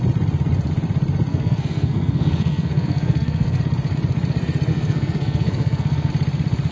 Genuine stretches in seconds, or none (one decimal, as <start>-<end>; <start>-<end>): 0.0-1.3; 3.6-4.7; 6.1-6.7